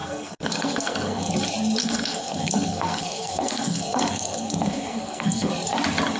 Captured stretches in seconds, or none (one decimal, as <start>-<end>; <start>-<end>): 1.3-1.8; 5.5-6.2